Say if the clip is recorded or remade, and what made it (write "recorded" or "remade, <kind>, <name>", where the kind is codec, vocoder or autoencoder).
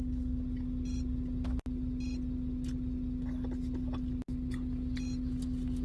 recorded